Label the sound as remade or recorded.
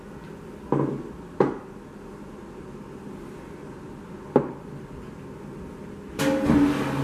recorded